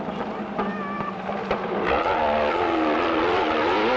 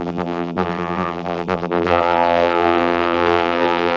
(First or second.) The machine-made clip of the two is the second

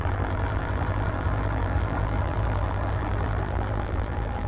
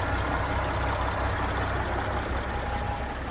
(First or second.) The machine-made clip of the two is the first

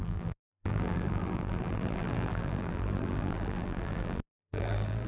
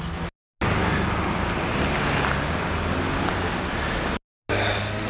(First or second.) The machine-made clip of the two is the first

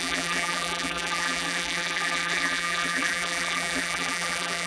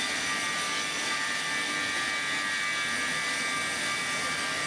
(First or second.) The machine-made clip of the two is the first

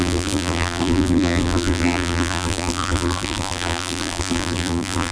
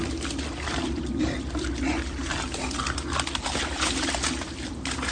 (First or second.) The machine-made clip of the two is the first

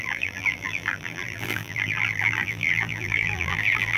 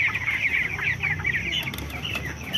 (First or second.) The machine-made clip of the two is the first